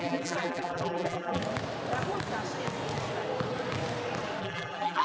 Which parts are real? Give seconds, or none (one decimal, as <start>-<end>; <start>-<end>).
1.4-4.4